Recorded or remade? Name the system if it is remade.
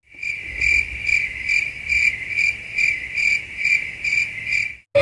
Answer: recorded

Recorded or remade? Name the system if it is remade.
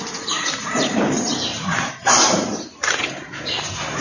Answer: remade, vocoder, BigVGAN v2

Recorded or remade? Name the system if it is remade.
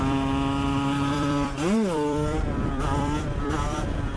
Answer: remade, vocoder, BigVGAN v2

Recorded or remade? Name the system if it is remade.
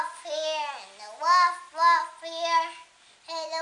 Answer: recorded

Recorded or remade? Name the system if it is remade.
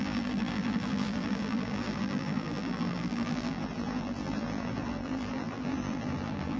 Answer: remade, vocoder, BigVGAN v2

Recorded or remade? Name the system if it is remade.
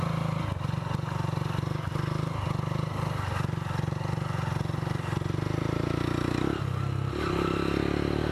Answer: recorded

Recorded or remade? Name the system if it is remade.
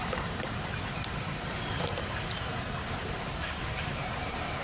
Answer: remade, vocoder, BigVGAN v2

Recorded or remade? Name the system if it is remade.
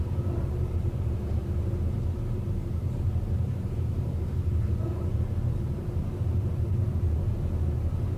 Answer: remade, vocoder, BigVGAN v2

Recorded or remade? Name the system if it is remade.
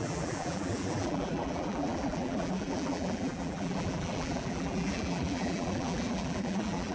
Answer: remade, vocoder, BigVGAN v2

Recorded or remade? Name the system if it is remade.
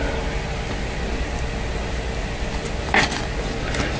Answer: recorded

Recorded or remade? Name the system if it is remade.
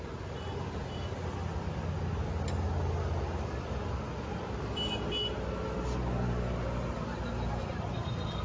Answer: recorded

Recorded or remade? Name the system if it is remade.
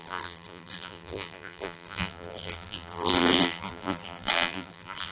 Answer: remade, vocoder, BigVGAN v2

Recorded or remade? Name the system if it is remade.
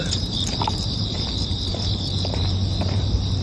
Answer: remade, vocoder, BigVGAN v2